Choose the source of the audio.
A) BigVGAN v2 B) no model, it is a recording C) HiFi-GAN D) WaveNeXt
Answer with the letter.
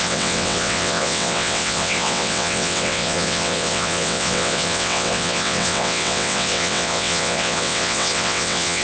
D